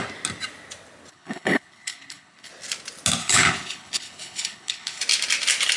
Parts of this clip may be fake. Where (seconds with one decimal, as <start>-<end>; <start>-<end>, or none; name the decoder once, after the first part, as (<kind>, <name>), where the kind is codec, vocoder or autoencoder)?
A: 1.1-2.5 (codec, HILCodec); 3.2-5.0